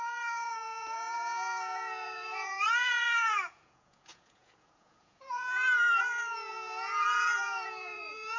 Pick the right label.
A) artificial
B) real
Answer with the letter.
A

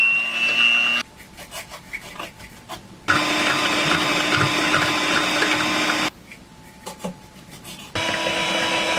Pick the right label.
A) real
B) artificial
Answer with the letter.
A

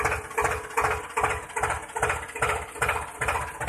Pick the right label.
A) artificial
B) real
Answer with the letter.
B